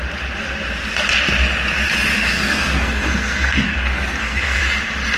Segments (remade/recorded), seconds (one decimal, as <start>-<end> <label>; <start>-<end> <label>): 0.0-2.1 recorded; 2.1-4.6 remade; 4.6-5.2 recorded